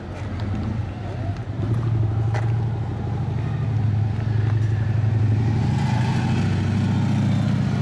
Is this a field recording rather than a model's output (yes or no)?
yes